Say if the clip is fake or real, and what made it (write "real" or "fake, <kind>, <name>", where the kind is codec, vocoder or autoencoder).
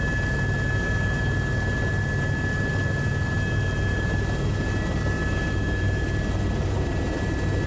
real